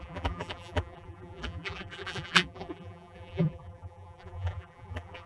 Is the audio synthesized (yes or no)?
yes